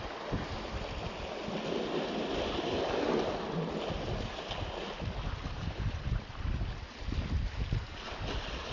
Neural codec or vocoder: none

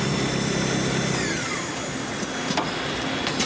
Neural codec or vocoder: none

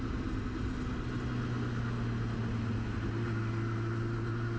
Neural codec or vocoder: none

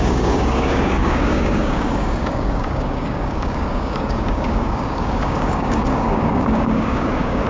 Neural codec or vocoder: codec, DAC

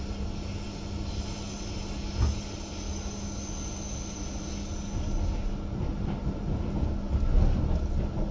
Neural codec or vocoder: none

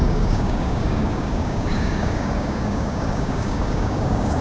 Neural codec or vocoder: codec, DAC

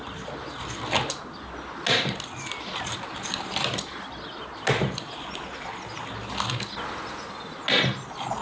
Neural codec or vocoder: none